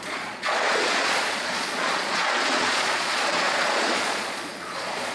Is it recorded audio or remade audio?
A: remade